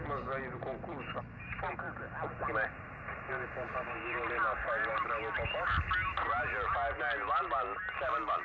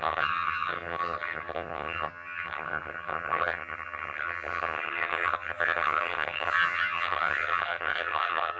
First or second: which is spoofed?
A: second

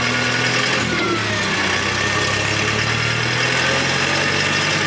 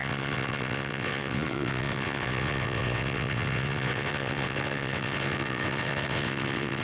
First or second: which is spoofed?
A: second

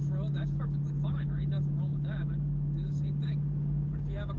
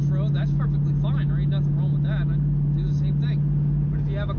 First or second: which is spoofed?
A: first